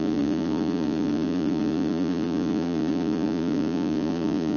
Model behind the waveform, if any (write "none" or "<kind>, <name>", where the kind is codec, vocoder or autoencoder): vocoder, Vocos